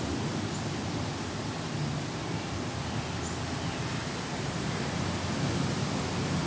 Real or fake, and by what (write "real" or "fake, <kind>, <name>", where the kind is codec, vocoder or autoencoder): real